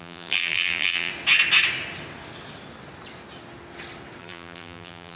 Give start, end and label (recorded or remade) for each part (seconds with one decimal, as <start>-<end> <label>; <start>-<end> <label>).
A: 0.0-1.1 remade; 1.1-4.2 recorded; 4.2-5.2 remade